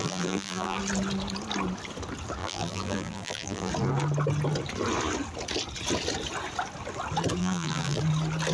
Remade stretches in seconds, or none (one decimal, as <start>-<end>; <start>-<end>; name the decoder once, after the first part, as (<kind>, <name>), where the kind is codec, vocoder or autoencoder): 0.0-0.8 (vocoder, BigVGAN v2); 2.4-3.7; 7.4-8.0